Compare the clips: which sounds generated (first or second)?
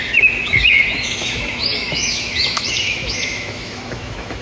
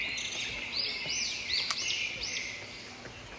first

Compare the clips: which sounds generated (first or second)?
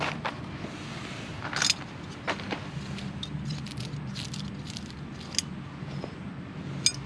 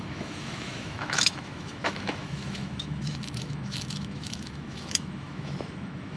second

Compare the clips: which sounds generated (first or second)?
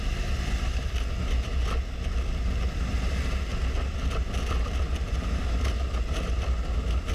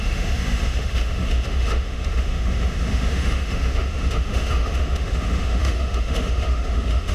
second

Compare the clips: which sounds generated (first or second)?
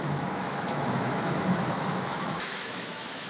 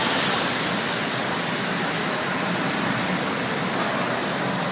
first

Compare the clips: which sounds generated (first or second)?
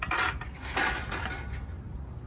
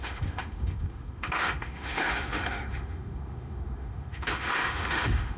second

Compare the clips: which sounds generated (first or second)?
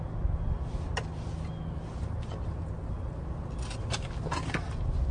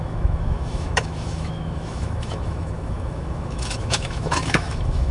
second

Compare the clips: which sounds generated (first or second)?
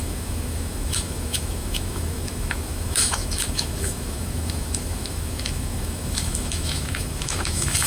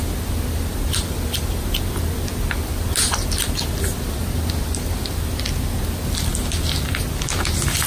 first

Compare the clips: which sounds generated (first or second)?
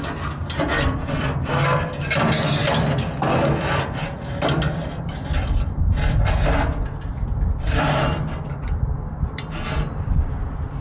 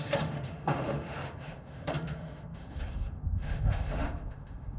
second